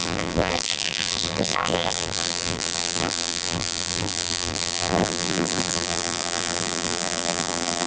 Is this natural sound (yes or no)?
no